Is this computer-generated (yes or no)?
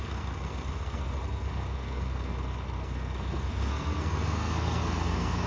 yes